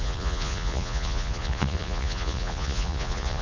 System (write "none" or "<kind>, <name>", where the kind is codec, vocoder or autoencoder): vocoder, Vocos